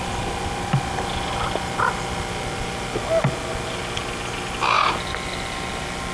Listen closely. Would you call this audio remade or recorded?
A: recorded